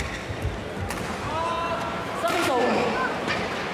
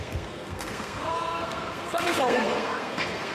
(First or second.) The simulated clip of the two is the second